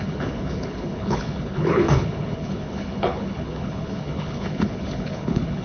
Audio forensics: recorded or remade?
remade